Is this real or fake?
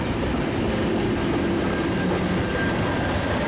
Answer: real